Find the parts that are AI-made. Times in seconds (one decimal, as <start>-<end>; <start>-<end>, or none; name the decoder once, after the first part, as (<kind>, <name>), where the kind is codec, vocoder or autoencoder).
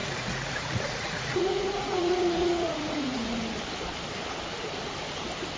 0.0-3.4 (vocoder, Vocos)